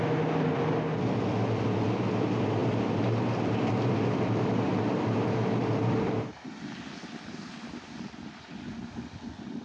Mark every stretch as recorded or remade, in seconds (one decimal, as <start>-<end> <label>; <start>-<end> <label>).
0.0-9.6 recorded